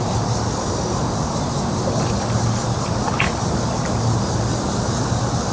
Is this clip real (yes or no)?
yes